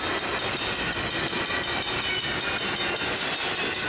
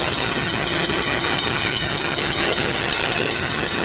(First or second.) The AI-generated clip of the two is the second